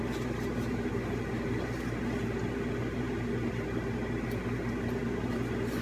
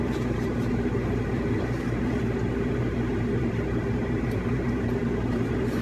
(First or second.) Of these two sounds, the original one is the first